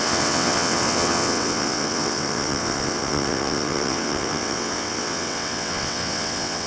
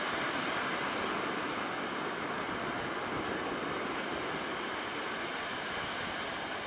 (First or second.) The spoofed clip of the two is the first